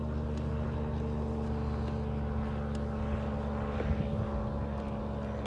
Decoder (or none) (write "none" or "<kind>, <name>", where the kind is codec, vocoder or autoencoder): none